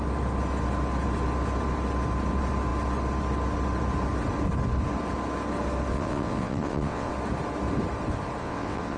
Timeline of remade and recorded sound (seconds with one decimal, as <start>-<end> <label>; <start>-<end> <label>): 0.0-5.9 recorded; 5.9-7.1 remade; 7.1-8.4 recorded; 8.4-9.0 remade